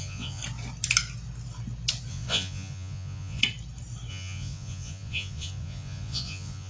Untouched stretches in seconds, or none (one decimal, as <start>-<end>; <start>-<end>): 0.4-2.1; 3.4-4.1